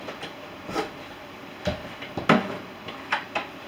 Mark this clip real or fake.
real